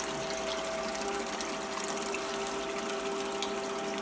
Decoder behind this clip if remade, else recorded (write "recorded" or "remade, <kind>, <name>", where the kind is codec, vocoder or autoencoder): recorded